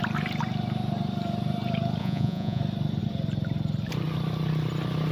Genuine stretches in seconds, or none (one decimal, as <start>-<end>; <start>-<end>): 0.0-2.0; 2.6-5.1